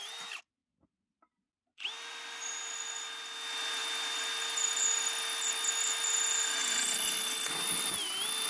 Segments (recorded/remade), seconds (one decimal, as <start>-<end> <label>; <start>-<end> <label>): 0.0-8.5 recorded